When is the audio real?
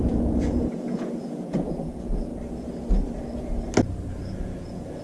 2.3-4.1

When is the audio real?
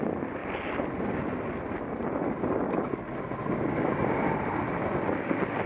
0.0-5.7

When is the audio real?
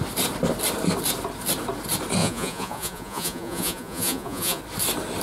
0.0-2.2; 4.6-5.2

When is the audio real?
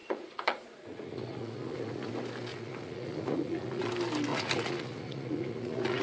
2.1-2.5; 3.9-4.3